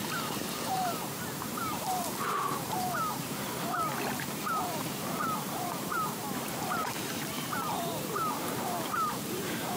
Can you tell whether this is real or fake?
fake